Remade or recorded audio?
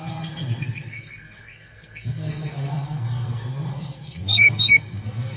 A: remade